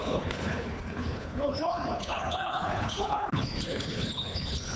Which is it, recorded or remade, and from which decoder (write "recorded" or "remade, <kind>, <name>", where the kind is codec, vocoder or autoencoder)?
remade, codec, HILCodec